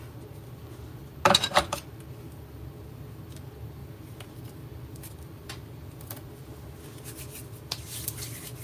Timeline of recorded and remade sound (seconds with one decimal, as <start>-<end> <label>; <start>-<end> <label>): 0.0-3.8 recorded; 3.8-6.8 remade; 6.8-8.6 recorded